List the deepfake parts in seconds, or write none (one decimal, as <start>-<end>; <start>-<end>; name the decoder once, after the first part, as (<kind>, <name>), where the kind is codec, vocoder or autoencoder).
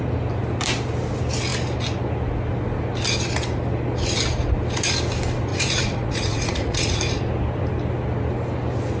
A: 5.5-7.0 (vocoder, Vocos)